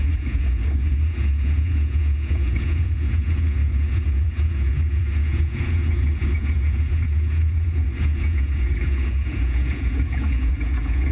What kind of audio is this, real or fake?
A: fake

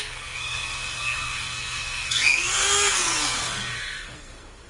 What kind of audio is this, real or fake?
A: fake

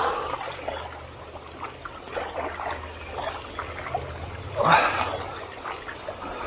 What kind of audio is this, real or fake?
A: real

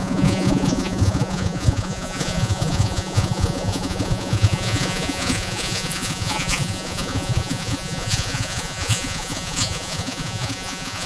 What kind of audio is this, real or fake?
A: fake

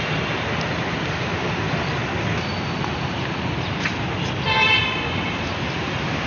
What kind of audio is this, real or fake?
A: real